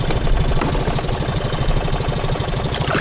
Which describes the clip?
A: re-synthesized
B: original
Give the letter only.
B